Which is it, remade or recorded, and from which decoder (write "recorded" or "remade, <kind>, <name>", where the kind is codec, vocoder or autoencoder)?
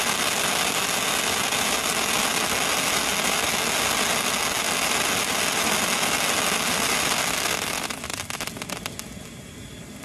recorded